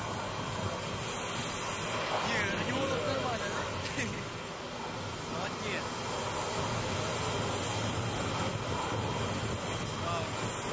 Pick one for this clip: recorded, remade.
recorded